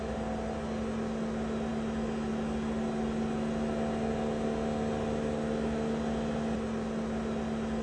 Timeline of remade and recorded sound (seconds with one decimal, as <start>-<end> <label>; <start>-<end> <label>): 0.0-7.8 recorded